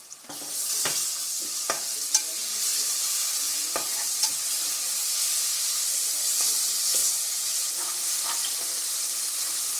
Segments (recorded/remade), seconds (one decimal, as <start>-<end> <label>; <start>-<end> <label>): 0.0-7.0 recorded; 7.0-7.7 remade; 7.7-9.8 recorded

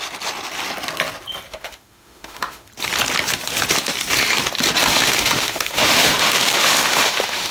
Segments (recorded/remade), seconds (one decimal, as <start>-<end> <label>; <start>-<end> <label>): 0.0-1.5 recorded; 1.5-2.7 remade; 2.7-4.9 recorded; 4.9-7.5 remade

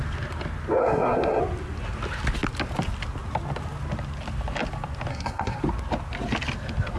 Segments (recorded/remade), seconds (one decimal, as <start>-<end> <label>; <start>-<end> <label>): 0.0-0.8 recorded; 0.8-1.4 remade; 1.4-5.1 recorded; 5.1-5.6 remade; 5.6-7.0 recorded

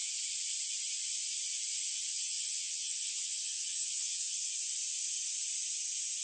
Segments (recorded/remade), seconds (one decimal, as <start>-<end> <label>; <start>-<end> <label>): 0.0-2.1 recorded; 2.1-4.5 remade; 4.5-6.2 recorded

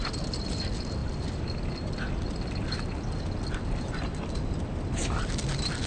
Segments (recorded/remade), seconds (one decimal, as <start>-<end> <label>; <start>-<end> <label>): 0.0-5.9 recorded

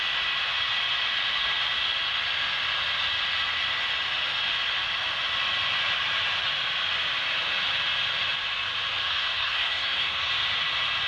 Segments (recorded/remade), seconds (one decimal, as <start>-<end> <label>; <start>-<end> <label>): 0.0-9.1 recorded; 9.1-10.3 remade; 10.3-11.1 recorded

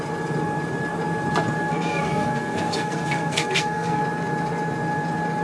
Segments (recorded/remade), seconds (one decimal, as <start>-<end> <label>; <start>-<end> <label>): 0.0-1.7 recorded; 1.7-4.0 remade; 4.0-5.4 recorded

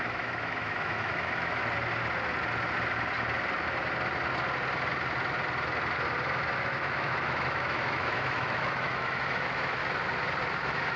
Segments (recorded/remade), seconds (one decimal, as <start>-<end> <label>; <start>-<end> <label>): 0.0-1.6 remade; 1.6-6.6 recorded; 6.6-9.8 remade; 9.8-10.6 recorded; 10.6-11.0 remade